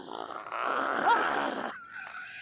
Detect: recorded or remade recorded